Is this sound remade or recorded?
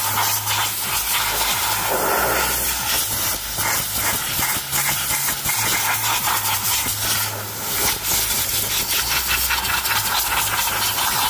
recorded